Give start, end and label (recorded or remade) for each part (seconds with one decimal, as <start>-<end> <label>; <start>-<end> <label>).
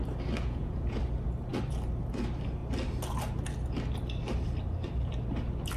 0.0-0.4 recorded; 0.4-1.0 remade; 1.0-5.8 recorded